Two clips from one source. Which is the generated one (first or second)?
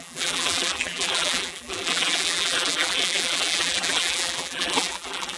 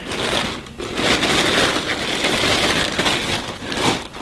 first